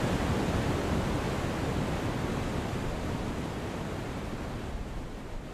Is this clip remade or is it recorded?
recorded